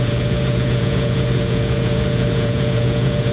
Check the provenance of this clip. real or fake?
fake